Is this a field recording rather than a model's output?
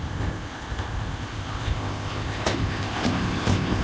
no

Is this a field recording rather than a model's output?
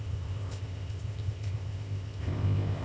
no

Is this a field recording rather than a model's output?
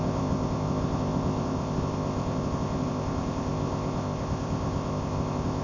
no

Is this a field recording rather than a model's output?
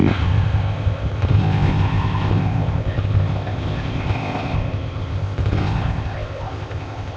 no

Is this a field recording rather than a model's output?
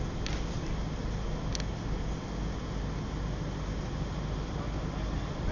yes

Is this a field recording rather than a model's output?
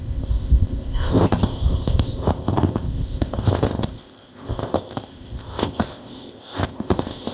no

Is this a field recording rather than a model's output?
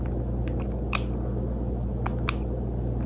yes